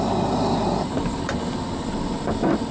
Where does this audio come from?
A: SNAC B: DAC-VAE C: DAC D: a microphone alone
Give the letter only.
D